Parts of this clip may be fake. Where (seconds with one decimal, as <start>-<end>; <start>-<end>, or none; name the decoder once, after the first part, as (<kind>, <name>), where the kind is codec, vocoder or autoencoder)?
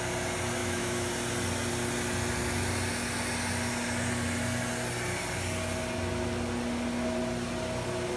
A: 0.6-1.1 (autoencoder, DAC-VAE)